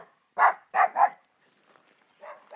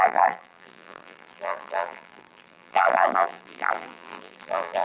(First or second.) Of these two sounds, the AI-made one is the second